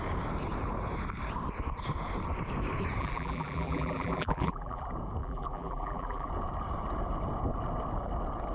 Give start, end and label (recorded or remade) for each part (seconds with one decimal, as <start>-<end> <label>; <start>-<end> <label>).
0.0-3.0 recorded; 3.0-4.8 remade; 4.8-5.2 recorded; 5.2-6.3 remade; 6.3-8.5 recorded